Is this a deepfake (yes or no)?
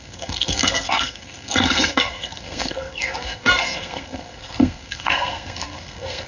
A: yes